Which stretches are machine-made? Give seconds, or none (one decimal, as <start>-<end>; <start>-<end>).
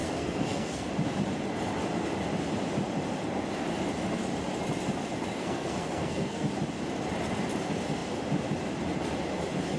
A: 0.0-0.9; 5.4-6.5